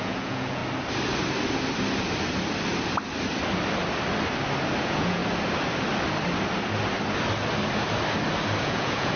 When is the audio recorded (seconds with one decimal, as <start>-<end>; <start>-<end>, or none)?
0.6-4.8; 5.2-8.6